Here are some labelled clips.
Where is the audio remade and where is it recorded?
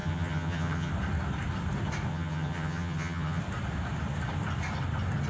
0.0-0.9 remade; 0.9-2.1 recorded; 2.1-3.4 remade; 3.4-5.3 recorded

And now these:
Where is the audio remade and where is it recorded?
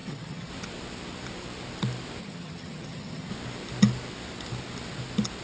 0.0-0.5 remade; 0.5-2.2 recorded; 2.2-3.3 remade; 3.3-5.4 recorded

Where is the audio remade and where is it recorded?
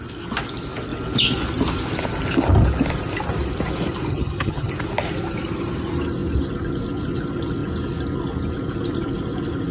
0.0-4.1 recorded; 4.1-4.7 remade; 4.7-9.7 recorded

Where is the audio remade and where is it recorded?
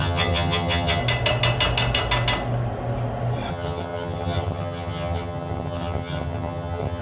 0.0-1.0 remade; 1.0-3.5 recorded; 3.5-7.0 remade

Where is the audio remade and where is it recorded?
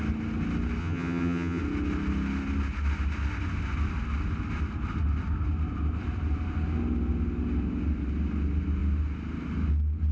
0.0-0.8 recorded; 0.8-1.6 remade; 1.6-10.1 recorded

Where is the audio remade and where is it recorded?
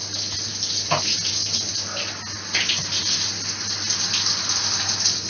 0.0-5.3 recorded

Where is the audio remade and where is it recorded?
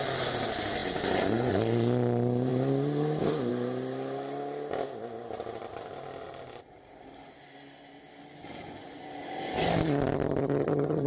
0.0-10.4 recorded; 10.4-11.1 remade